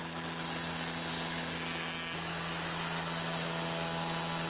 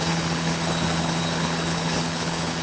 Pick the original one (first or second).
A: first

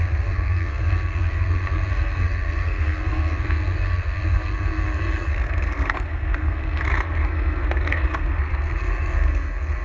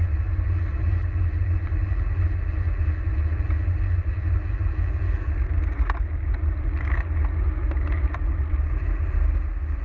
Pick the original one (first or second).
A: second